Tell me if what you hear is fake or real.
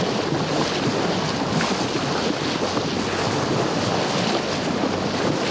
real